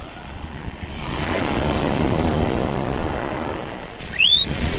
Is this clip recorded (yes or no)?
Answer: no